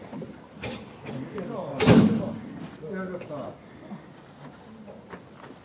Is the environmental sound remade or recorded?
recorded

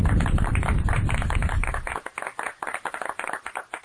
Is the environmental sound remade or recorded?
remade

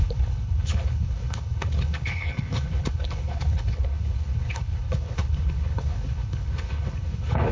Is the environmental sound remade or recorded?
remade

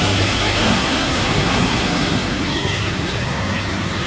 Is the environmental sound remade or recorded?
remade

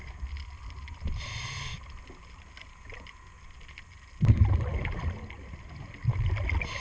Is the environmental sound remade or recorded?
recorded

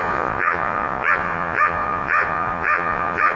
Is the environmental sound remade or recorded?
remade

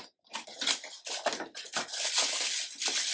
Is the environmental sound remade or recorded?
recorded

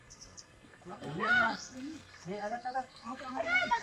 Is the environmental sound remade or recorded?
remade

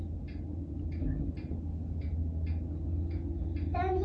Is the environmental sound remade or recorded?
recorded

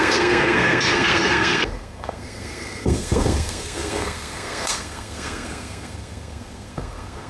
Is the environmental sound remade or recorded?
remade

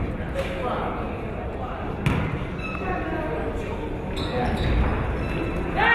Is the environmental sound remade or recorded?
recorded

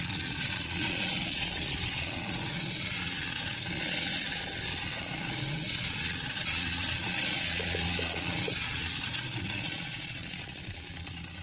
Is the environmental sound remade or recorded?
remade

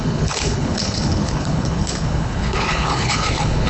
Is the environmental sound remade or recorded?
remade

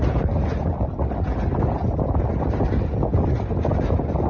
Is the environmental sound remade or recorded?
recorded